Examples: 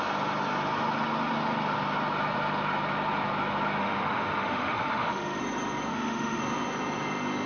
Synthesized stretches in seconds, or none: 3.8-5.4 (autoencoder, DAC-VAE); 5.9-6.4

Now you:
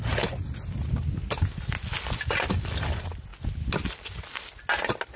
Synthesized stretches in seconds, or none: none

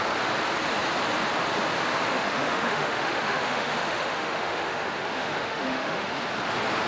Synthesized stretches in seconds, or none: 2.1-6.2 (autoencoder, DAC-VAE)

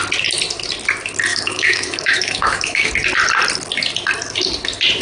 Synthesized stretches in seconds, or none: 1.3-2.9 (autoencoder, DAC-VAE)